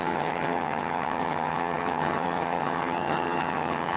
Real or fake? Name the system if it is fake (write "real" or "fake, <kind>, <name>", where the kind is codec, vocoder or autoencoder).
fake, vocoder, HiFi-GAN